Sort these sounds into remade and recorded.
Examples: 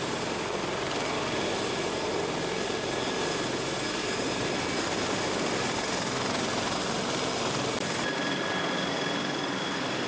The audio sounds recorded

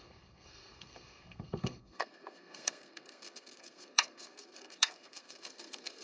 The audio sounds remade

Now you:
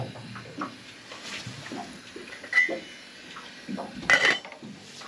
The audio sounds recorded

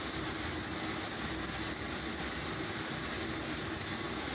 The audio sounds recorded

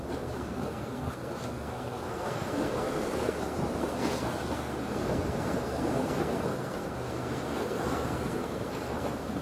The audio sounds remade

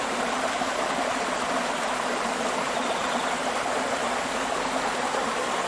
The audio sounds recorded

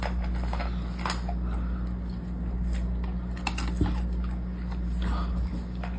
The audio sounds recorded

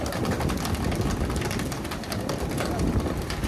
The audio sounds recorded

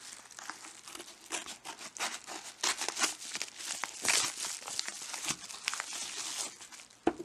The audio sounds recorded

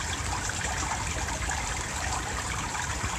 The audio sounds recorded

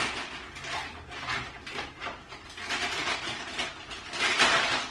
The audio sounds recorded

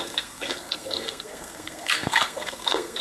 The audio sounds remade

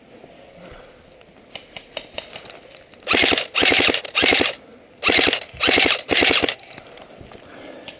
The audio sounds recorded